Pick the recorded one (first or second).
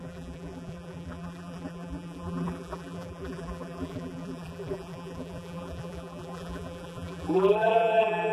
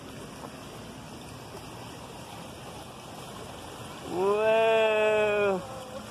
second